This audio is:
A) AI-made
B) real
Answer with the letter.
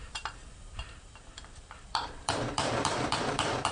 A